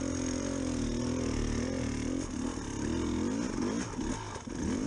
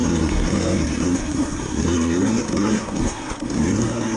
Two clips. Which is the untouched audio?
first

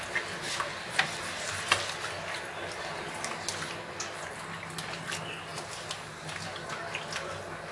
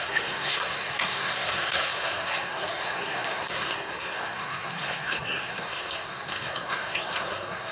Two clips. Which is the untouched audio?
first